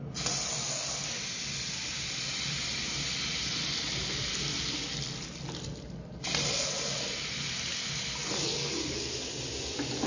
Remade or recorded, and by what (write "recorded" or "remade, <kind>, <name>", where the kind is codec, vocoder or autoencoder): recorded